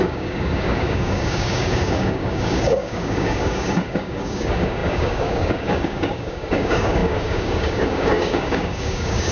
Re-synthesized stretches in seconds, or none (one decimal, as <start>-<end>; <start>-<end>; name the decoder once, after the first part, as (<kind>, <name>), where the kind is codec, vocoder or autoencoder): 0.0-9.3 (codec, DAC)